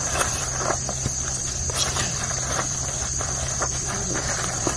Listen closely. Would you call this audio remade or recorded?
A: remade